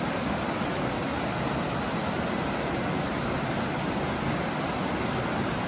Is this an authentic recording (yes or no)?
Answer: yes